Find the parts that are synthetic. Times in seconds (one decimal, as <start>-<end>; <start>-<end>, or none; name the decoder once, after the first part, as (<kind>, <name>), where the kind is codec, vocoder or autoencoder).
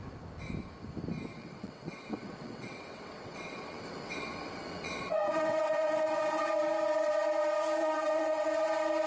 1.3-6.5 (vocoder, WaveNeXt); 7.8-8.5